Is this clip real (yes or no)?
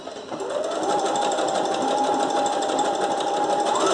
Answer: yes